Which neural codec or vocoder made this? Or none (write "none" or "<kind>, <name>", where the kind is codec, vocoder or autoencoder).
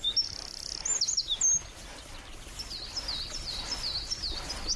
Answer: none